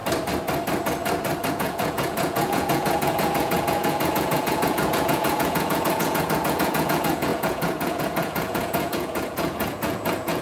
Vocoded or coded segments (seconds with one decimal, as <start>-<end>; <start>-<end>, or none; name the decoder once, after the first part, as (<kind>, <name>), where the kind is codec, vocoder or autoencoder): 1.5-10.4 (vocoder, Vocos)

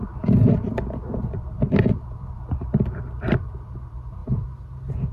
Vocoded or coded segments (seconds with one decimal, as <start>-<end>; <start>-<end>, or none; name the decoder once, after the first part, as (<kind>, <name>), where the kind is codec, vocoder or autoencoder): 0.0-4.2 (vocoder, BigVGAN v2)

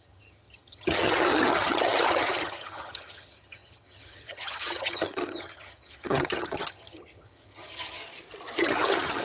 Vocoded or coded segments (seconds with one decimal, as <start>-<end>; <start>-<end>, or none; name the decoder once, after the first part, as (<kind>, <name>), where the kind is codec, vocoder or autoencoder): 0.0-8.0 (vocoder, HiFi-GAN); 8.6-9.2

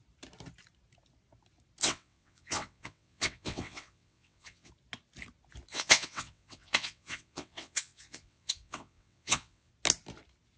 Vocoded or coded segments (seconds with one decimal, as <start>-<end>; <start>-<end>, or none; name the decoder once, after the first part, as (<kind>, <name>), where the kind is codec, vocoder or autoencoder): 1.8-4.7 (vocoder, WaveNeXt); 5.7-9.7

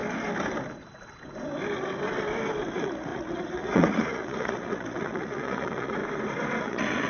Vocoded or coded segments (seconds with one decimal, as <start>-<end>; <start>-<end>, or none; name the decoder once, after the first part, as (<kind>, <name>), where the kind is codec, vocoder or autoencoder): 2.7-6.0 (vocoder, Vocos); 6.6-7.1

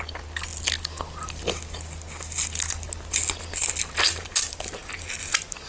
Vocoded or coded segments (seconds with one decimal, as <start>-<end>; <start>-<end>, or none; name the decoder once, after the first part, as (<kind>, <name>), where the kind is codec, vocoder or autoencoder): none

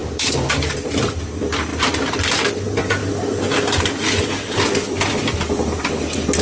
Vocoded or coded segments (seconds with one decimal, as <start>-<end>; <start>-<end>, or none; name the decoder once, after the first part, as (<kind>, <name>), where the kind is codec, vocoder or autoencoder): 0.0-0.9 (vocoder, BigVGAN v2); 1.7-2.5